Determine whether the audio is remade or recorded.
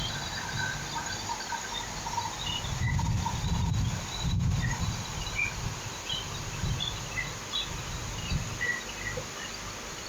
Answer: recorded